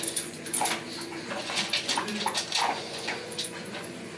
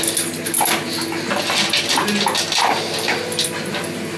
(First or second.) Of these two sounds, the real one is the second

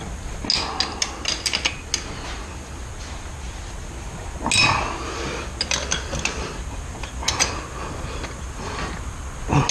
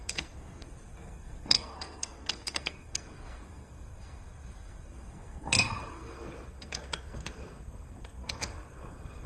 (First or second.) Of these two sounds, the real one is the first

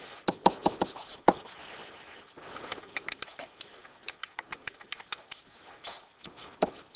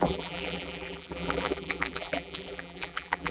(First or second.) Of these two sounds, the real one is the first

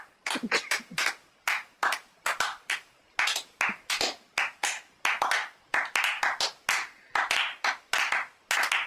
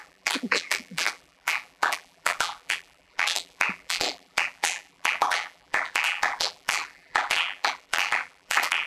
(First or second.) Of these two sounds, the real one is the first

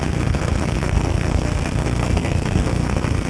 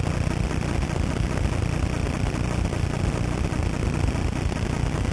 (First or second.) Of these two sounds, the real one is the second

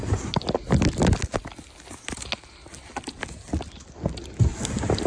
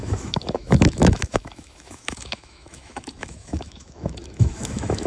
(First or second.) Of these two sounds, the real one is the first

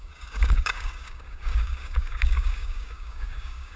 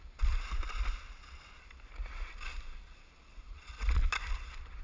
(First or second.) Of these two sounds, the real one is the second